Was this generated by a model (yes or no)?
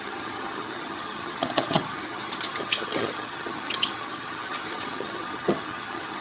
yes